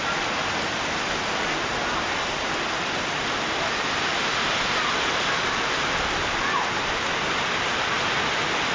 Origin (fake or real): real